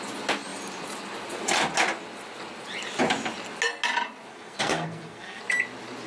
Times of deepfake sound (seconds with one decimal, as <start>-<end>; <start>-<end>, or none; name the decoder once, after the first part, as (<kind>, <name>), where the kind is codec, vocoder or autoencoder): 4.3-5.4 (codec, SNAC)